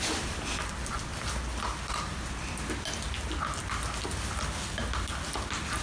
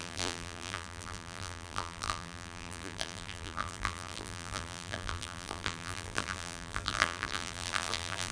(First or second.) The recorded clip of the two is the first